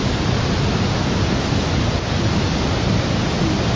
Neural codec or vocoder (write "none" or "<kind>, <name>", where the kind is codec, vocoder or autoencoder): none